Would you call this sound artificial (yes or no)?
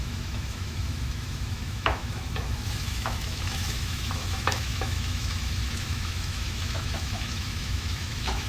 yes